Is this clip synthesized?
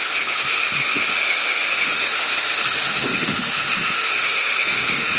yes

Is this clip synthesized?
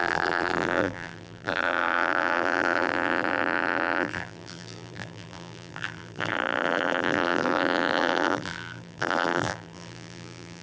yes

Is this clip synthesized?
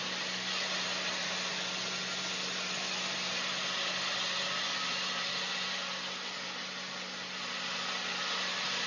no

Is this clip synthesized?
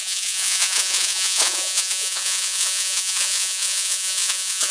yes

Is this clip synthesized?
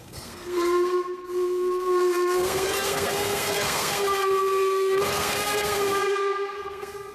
yes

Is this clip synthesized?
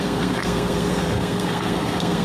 yes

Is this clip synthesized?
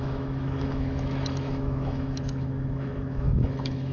yes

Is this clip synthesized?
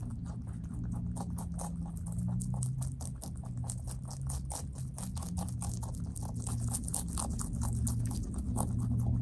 no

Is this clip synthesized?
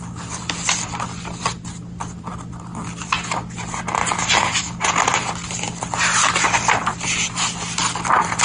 no